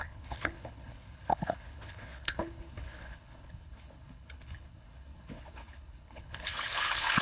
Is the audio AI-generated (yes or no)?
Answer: yes